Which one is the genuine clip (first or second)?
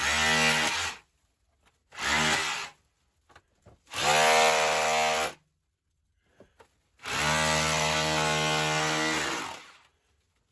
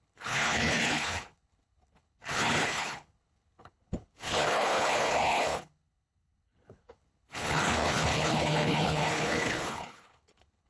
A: first